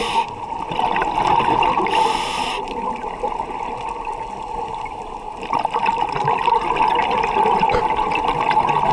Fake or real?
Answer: real